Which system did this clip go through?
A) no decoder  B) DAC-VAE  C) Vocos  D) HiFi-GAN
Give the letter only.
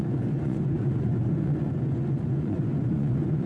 C